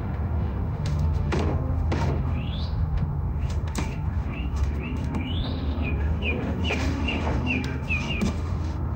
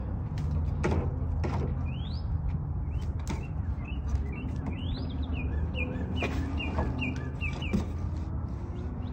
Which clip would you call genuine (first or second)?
second